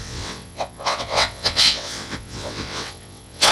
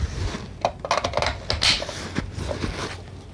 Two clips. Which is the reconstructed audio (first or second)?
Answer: first